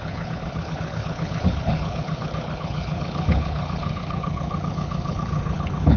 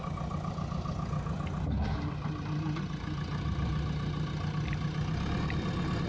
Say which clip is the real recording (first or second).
second